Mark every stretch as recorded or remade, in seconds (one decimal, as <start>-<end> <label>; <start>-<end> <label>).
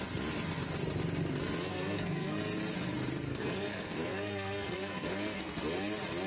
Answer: 0.0-1.7 recorded; 1.7-2.4 remade; 2.4-3.3 recorded; 3.3-5.6 remade; 5.6-6.3 recorded